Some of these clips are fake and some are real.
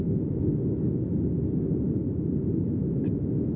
real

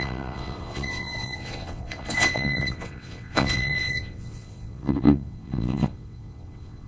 fake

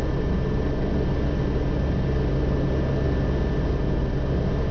real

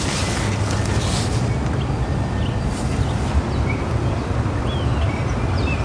real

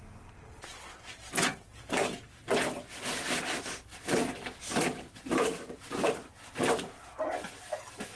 real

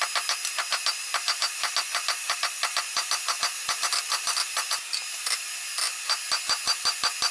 real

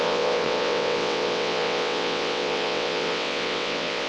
fake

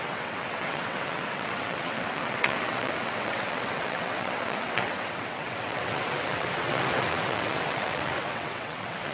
fake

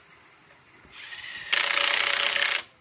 real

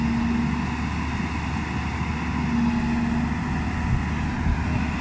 real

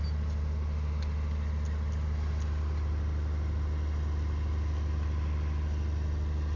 real